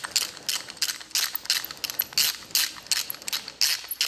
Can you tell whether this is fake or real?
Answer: real